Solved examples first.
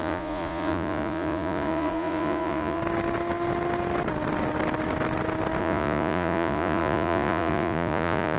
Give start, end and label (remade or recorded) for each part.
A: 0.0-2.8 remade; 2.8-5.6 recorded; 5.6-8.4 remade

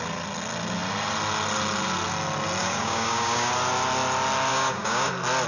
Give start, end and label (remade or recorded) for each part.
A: 0.0-2.6 recorded; 2.6-3.5 remade; 3.5-4.5 recorded; 4.5-5.1 remade; 5.1-5.5 recorded

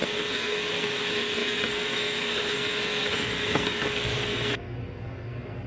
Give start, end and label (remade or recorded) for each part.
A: 0.0-5.7 remade

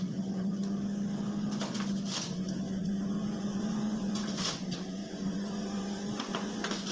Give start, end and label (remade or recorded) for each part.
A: 0.0-0.6 remade; 0.6-2.8 recorded; 2.8-6.9 remade